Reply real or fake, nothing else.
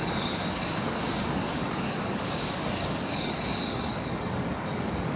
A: fake